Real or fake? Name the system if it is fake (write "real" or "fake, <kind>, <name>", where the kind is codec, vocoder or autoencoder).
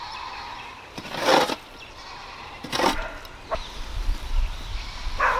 fake, vocoder, BigVGAN v2